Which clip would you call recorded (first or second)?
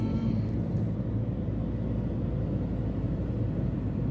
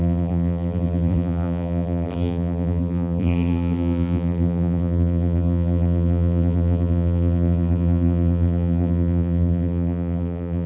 first